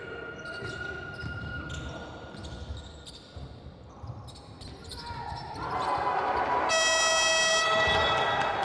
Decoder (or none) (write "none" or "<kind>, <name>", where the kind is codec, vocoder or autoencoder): none